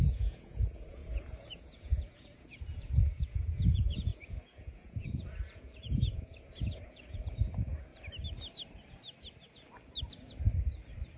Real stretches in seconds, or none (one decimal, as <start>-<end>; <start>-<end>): 7.9-11.2